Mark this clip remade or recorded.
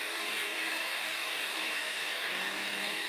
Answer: remade